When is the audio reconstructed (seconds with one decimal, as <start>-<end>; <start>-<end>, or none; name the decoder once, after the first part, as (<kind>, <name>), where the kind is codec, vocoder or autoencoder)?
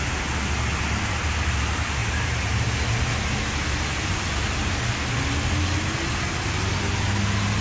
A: 2.0-2.7 (vocoder, BigVGAN v2)